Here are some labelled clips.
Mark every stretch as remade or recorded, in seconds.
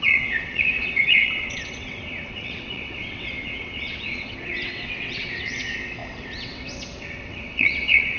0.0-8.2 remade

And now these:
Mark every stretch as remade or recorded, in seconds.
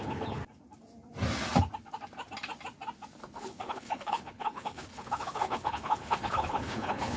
0.0-0.4 remade; 0.4-3.2 recorded; 3.2-7.2 remade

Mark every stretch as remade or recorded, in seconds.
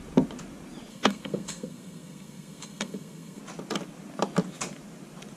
0.0-0.9 recorded; 0.9-3.4 remade; 3.4-5.4 recorded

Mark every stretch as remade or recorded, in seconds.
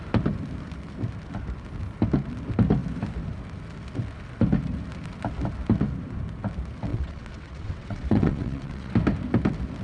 0.0-6.9 recorded; 6.9-8.9 remade; 8.9-9.8 recorded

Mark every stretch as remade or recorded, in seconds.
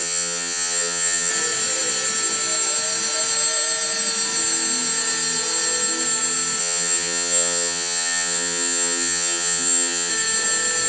0.0-1.3 remade; 1.3-6.6 recorded; 6.6-10.1 remade; 10.1-10.9 recorded